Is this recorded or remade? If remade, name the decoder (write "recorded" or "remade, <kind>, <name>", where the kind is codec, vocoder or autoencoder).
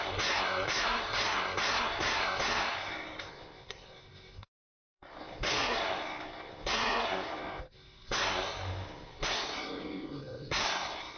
remade, codec, SNAC